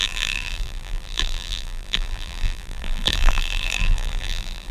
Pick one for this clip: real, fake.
fake